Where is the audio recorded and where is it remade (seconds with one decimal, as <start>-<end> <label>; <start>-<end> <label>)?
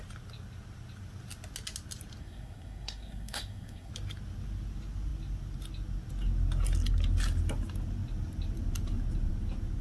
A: 0.0-2.2 recorded; 2.2-3.9 remade; 3.9-9.8 recorded